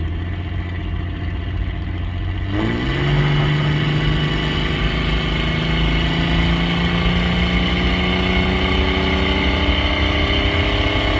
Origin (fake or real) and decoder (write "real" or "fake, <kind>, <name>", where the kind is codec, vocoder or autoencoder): real